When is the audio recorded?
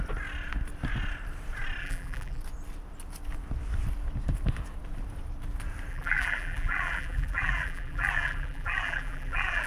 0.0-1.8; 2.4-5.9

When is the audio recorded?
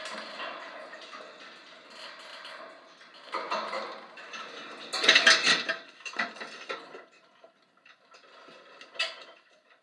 0.0-9.8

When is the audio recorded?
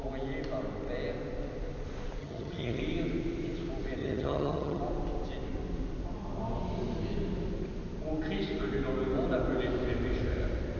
0.0-2.2; 2.8-4.0; 4.8-10.8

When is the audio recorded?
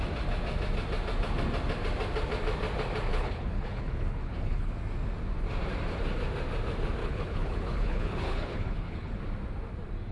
0.0-3.1; 4.7-7.0; 9.2-10.1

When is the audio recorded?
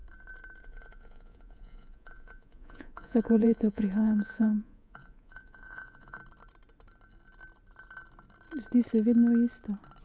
0.0-0.6; 6.2-10.0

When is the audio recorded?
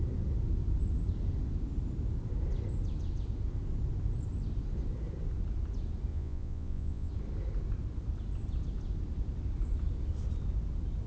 0.0-6.1; 7.1-11.1